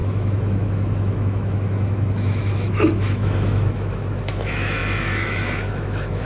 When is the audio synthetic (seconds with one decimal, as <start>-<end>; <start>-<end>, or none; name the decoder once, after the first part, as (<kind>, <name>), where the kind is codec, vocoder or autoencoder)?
0.0-6.2 (autoencoder, DAC-VAE)